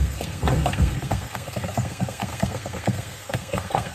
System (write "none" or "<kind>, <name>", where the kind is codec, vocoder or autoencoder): codec, SNAC